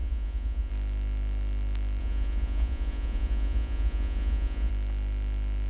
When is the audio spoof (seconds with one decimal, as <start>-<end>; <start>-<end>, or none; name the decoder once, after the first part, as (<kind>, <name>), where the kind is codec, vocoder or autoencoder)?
0.0-0.7 (vocoder, Vocos); 2.0-4.7